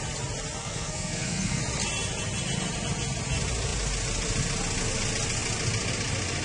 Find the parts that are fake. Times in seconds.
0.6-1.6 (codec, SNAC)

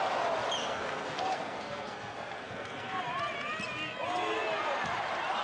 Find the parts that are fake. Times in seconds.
0.6-3.0 (codec, SNAC)